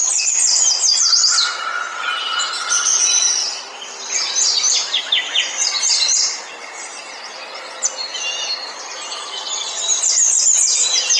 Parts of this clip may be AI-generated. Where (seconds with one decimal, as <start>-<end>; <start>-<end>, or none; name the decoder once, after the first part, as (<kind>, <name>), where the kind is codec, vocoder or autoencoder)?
none